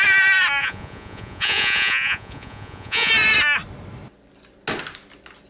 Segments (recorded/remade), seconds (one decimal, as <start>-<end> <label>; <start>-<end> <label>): 0.0-0.6 recorded; 0.6-3.1 remade; 3.1-5.5 recorded

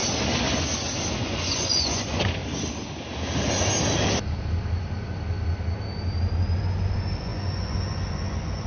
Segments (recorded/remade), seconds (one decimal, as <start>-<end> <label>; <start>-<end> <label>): 0.0-1.2 recorded; 1.2-2.4 remade; 2.4-6.6 recorded; 6.6-8.7 remade

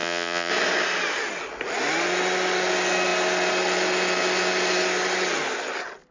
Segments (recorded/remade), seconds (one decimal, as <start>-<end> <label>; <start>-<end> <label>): 0.0-0.5 remade; 0.5-6.1 recorded